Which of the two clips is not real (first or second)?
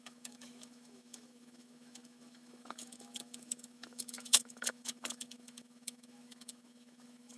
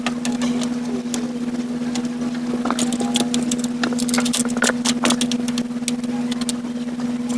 first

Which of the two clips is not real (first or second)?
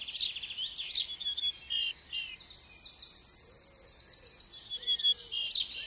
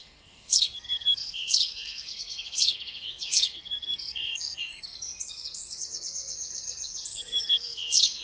second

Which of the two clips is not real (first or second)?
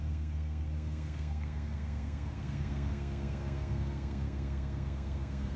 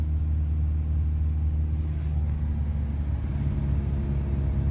first